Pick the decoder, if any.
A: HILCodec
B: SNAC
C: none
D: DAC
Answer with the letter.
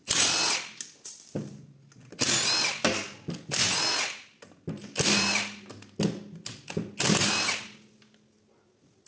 C